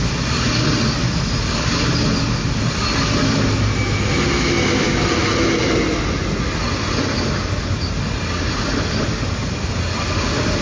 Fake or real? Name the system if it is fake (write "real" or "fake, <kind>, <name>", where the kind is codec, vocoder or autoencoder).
real